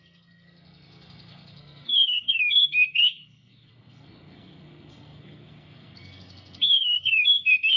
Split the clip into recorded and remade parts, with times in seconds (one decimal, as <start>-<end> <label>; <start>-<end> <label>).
0.0-7.8 remade